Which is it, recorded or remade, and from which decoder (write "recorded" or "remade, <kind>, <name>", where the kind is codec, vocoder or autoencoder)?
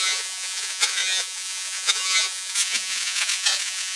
remade, vocoder, Vocos